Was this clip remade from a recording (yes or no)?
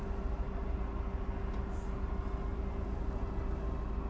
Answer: no